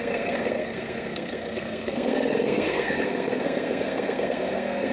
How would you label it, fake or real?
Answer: fake